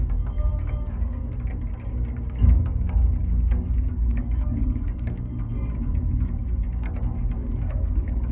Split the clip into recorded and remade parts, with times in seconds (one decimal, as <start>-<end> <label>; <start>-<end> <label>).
0.0-0.5 recorded; 0.5-1.2 remade; 1.2-2.4 recorded; 2.4-5.3 remade; 5.3-7.4 recorded; 7.4-8.3 remade